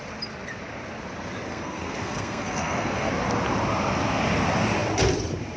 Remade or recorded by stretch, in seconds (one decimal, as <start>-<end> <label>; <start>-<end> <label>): 0.0-1.5 recorded; 1.5-3.1 remade; 3.1-5.6 recorded